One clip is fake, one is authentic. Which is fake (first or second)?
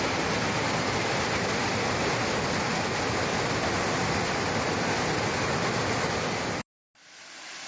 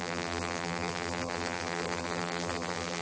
second